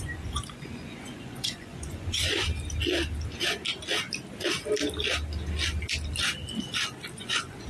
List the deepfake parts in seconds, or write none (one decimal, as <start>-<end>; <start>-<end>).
0.0-2.5; 7.1-7.7